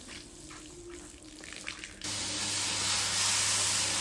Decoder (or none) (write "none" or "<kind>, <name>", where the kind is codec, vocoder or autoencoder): none